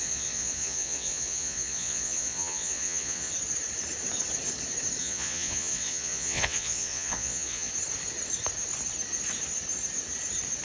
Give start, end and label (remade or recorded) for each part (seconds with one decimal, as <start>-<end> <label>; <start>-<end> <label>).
0.0-3.3 remade; 3.3-5.0 recorded; 5.0-7.7 remade; 7.7-10.6 recorded